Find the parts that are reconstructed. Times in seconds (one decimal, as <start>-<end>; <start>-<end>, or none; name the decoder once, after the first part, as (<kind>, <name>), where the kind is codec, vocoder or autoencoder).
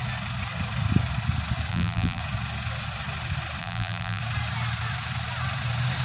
1.7-2.2 (vocoder, BigVGAN v2); 3.6-4.2